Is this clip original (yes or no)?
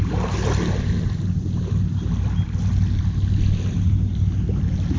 yes